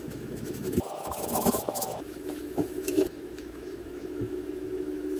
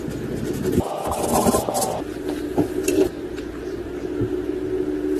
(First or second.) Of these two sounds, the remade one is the first